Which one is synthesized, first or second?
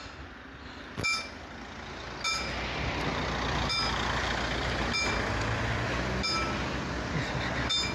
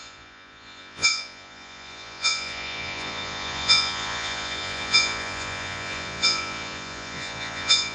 second